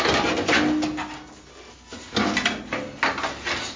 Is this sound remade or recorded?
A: recorded